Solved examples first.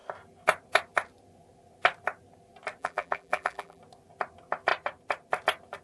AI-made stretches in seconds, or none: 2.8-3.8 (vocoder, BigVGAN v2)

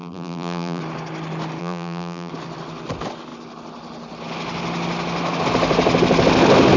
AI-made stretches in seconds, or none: 0.0-0.8 (vocoder, BigVGAN v2); 1.6-2.3

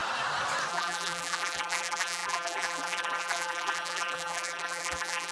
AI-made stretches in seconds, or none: 0.7-5.3 (vocoder, BigVGAN v2)

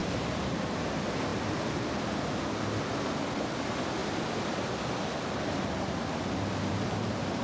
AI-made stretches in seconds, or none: 0.0-0.6 (vocoder, BigVGAN v2); 1.3-1.9

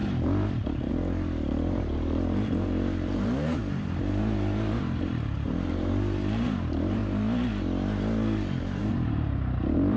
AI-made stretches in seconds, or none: 0.0-7.0 (vocoder, BigVGAN v2); 8.8-10.0

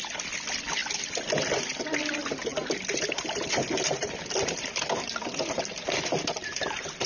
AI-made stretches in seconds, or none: 2.5-7.1 (vocoder, BigVGAN v2)

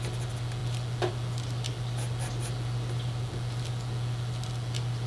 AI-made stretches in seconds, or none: none

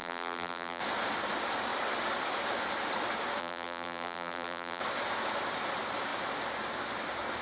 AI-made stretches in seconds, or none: 0.0-0.8 (vocoder, BigVGAN v2); 3.4-4.8